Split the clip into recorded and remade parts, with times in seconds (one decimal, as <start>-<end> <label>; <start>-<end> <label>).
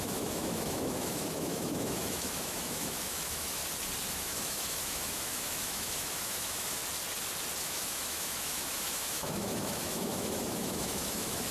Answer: 0.0-3.6 remade; 3.6-4.2 recorded; 4.2-6.8 remade; 6.8-7.6 recorded; 7.6-11.5 remade